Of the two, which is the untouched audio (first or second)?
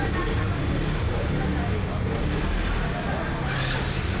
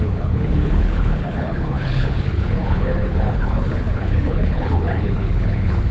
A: first